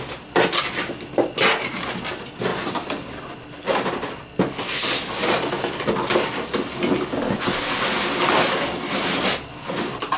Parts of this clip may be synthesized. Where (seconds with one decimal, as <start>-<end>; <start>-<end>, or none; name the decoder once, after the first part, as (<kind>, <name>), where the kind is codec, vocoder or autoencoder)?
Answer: none